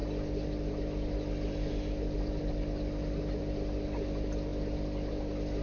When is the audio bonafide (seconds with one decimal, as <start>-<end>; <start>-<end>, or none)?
0.0-5.6